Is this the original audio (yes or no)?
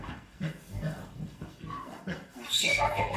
no